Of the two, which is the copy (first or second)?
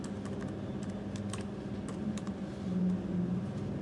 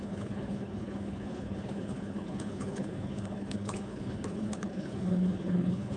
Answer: second